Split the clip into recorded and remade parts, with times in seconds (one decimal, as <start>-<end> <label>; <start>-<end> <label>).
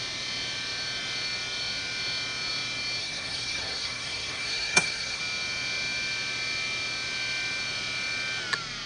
0.0-3.0 recorded; 3.0-5.2 remade; 5.2-8.9 recorded